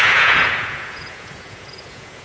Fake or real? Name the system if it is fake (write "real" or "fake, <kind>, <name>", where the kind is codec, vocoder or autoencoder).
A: fake, vocoder, Vocos